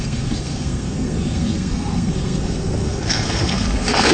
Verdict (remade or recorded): remade